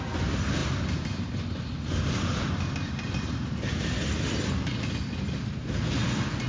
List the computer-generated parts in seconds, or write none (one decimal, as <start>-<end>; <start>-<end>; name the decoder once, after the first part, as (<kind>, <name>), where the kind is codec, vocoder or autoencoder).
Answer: none